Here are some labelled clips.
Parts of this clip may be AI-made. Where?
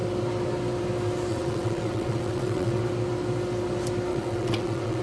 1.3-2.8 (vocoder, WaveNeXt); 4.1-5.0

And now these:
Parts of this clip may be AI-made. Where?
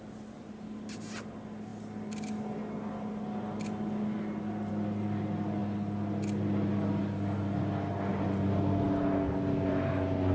none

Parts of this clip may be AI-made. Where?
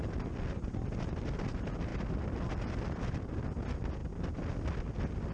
none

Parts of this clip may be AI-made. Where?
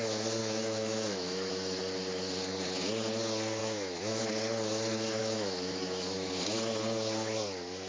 0.4-1.8 (autoencoder, DAC-VAE); 3.6-4.2; 5.2-6.3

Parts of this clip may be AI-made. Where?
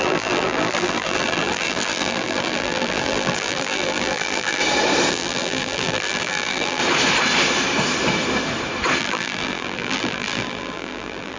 0.0-4.6 (vocoder, BigVGAN v2); 5.1-6.8; 9.0-11.4